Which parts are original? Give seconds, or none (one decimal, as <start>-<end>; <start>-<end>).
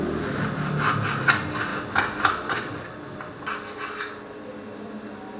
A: 0.0-5.4